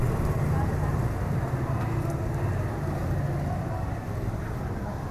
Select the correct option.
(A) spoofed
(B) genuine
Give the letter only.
B